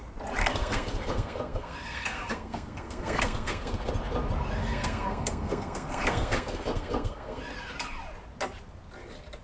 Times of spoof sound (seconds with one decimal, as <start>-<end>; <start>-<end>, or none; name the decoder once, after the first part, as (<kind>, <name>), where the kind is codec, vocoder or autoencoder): 0.4-3.9 (codec, SNAC); 4.6-7.4